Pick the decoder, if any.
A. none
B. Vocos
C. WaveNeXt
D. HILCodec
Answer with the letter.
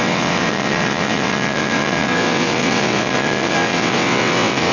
C